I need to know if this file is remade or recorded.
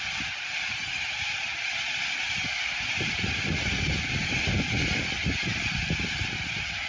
recorded